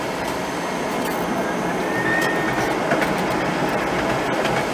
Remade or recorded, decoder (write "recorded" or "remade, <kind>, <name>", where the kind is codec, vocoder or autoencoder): recorded